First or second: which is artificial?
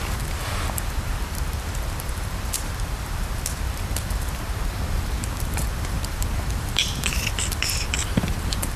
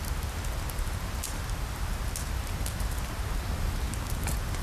first